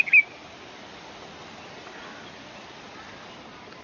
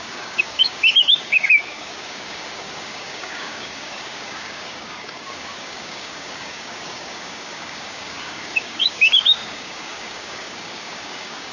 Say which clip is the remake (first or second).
second